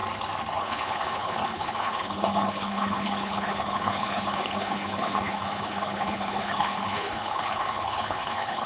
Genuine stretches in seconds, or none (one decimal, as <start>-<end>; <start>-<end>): 0.0-0.6